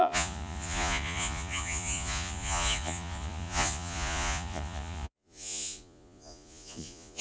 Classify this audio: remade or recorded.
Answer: remade